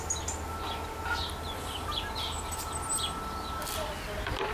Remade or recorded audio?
recorded